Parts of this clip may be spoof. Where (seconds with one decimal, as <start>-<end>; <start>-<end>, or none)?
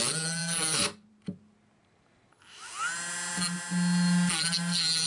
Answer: none